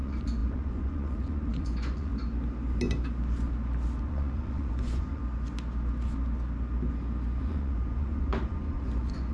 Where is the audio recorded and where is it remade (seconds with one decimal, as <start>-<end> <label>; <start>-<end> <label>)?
0.0-2.1 remade; 2.1-4.0 recorded; 4.0-5.2 remade; 5.2-7.4 recorded; 7.4-9.3 remade